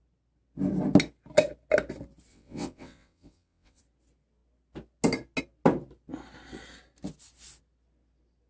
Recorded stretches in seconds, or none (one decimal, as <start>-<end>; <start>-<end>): 0.0-2.3; 3.8-8.5